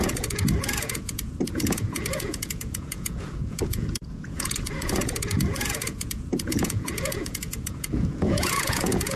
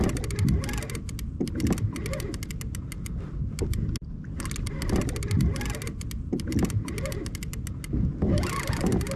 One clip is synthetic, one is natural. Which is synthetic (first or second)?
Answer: first